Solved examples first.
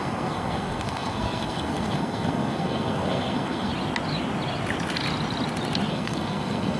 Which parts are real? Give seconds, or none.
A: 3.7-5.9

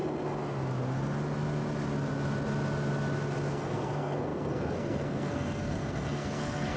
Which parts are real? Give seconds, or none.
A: 0.0-3.5

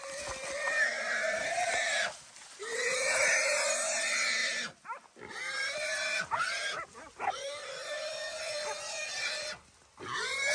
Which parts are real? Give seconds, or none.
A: 0.0-10.5

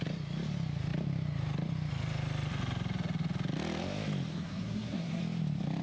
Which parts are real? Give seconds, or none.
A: 0.0-4.3; 5.2-5.8

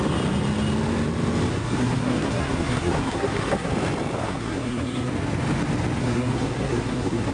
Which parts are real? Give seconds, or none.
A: 0.0-1.5; 3.7-4.2; 5.1-6.0

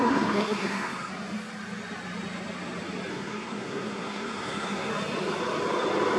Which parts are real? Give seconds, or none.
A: 1.1-3.1; 4.9-6.2

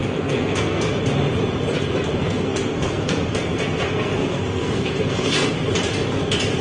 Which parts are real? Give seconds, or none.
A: 1.0-2.1; 5.7-6.6